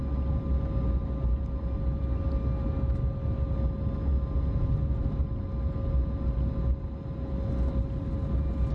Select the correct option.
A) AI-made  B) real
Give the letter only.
B